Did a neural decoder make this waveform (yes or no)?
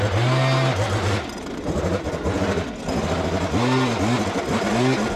no